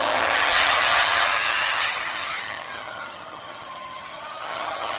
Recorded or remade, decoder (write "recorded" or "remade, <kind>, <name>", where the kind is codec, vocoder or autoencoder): remade, vocoder, HiFi-GAN